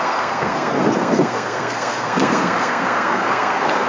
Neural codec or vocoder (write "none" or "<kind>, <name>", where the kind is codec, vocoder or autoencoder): codec, SNAC